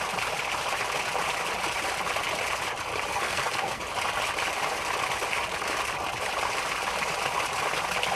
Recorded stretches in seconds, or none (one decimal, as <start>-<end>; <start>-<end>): 0.0-3.1; 3.8-8.2